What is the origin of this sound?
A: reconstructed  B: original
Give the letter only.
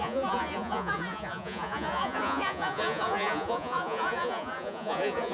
A